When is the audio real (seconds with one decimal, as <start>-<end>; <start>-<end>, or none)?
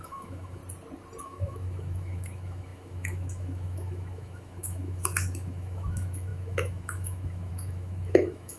0.6-1.2